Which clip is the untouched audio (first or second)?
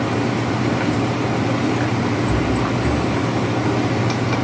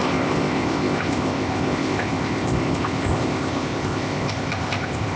first